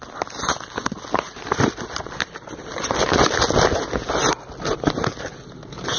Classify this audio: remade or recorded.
recorded